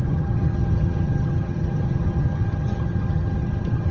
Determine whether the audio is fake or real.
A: fake